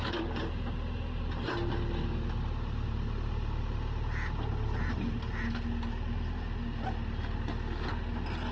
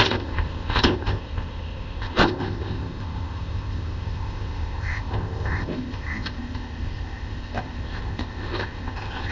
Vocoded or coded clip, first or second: second